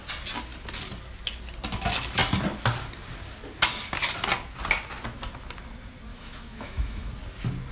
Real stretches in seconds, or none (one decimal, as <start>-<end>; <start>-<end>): 0.0-6.1; 7.1-7.7